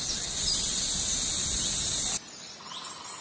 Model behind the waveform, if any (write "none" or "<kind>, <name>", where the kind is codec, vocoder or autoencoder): none